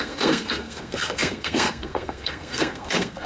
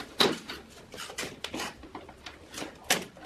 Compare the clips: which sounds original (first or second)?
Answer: second